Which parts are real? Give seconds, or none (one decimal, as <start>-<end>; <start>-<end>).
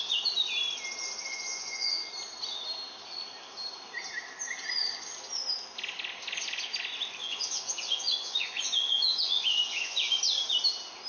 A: 0.0-1.3; 2.1-7.2; 10.2-11.1